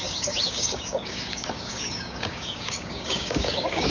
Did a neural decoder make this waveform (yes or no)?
yes